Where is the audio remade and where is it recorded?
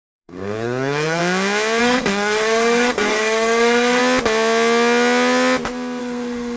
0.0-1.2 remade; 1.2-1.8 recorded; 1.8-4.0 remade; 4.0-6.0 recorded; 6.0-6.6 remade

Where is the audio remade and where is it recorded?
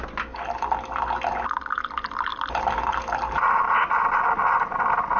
0.0-5.2 recorded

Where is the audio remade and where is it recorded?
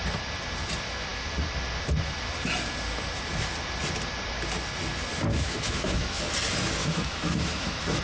0.0-5.3 recorded; 5.3-6.2 remade; 6.2-6.8 recorded; 6.8-8.0 remade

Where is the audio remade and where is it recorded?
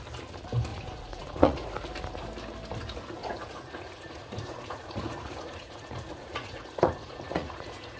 0.0-0.7 recorded; 0.7-1.7 remade; 1.7-3.2 recorded; 3.2-8.0 remade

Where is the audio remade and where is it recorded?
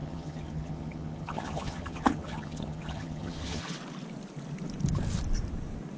0.0-3.6 remade; 3.6-6.0 recorded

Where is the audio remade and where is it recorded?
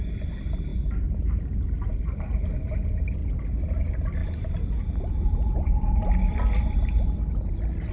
0.0-7.9 recorded